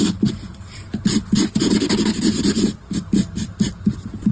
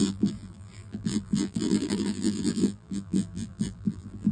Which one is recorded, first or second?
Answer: first